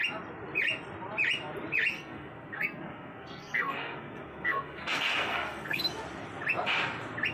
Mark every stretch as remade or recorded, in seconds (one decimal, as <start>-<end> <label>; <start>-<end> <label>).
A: 0.0-1.9 recorded; 1.9-5.8 remade; 5.8-7.3 recorded

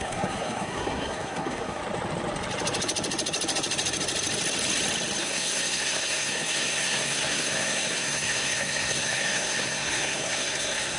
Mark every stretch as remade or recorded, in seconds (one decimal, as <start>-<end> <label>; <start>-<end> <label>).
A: 0.0-1.8 remade; 1.8-5.2 recorded; 5.2-11.0 remade

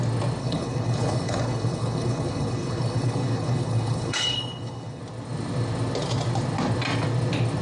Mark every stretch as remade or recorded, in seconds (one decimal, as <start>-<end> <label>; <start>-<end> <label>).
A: 0.0-0.4 recorded; 0.4-5.0 remade; 5.0-7.6 recorded

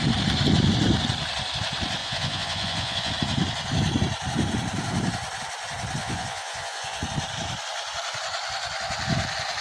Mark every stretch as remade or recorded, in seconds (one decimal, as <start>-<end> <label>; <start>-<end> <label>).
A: 0.0-2.0 recorded; 2.0-3.1 remade; 3.1-6.0 recorded; 6.0-7.0 remade; 7.0-9.6 recorded

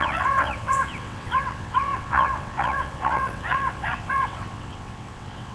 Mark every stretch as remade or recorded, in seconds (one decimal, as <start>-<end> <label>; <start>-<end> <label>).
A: 0.0-5.5 remade

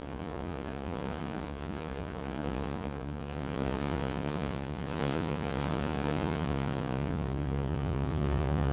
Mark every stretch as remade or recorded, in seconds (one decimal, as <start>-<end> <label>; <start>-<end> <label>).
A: 0.0-8.7 remade

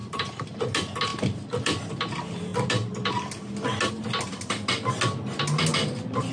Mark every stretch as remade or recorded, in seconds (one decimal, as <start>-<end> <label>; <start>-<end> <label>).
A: 0.0-0.6 remade; 0.6-6.3 recorded

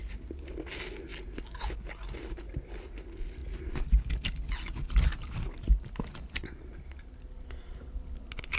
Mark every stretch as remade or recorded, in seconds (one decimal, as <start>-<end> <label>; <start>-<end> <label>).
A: 0.0-8.6 recorded